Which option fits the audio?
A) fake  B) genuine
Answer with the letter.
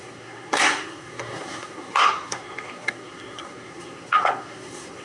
A